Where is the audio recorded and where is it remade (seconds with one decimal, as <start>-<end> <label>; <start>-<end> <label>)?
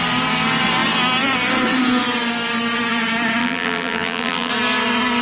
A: 0.0-3.4 recorded; 3.4-4.5 remade; 4.5-5.2 recorded